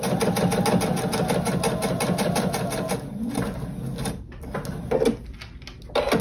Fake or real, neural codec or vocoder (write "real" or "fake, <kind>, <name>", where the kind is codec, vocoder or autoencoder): real